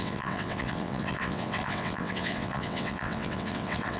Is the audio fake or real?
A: fake